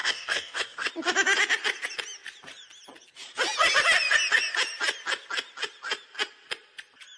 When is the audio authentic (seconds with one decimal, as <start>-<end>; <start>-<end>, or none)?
0.9-7.2